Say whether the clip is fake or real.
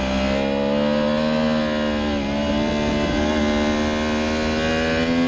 real